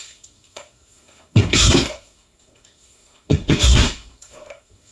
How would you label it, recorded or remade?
remade